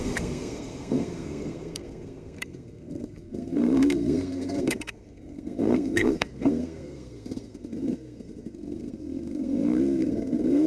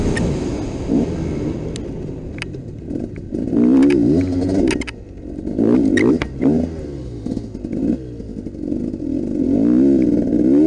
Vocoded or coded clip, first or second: first